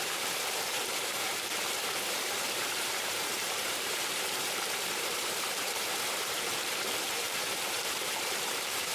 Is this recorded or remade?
remade